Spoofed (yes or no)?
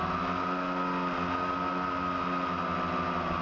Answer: no